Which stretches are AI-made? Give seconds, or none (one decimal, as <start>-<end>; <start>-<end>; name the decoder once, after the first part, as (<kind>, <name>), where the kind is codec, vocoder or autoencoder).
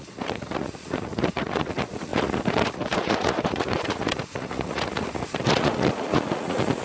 0.0-6.8 (vocoder, Vocos)